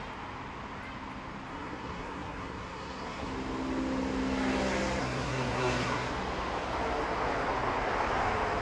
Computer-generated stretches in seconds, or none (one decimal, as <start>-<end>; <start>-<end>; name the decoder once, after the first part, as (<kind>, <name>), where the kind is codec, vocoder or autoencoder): 1.5-3.3 (codec, SNAC); 5.0-6.1

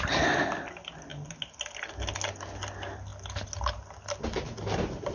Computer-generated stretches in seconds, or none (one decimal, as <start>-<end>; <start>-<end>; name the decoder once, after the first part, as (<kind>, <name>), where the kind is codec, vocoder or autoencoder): none

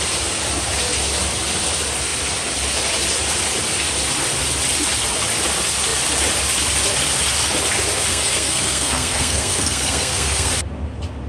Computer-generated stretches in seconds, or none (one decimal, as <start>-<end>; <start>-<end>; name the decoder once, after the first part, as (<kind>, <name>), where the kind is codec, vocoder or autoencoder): 8.1-10.5 (codec, SNAC)

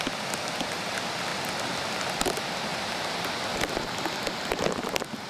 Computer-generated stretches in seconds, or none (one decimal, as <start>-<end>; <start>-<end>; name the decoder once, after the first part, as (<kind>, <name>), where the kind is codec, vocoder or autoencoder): 2.7-3.4 (vocoder, BigVGAN v2)

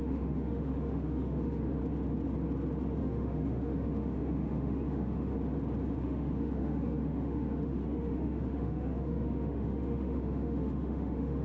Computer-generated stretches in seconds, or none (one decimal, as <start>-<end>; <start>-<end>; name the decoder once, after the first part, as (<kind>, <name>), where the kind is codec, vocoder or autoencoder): 0.0-1.8 (autoencoder, DAC-VAE); 3.0-5.3; 6.0-11.4

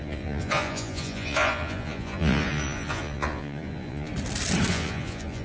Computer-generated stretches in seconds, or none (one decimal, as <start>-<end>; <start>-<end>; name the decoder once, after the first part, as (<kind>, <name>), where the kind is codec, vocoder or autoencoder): 0.0-4.1 (vocoder, Vocos); 4.7-5.4

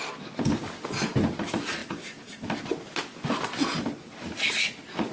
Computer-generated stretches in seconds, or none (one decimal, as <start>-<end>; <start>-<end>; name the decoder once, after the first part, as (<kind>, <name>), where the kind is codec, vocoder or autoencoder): none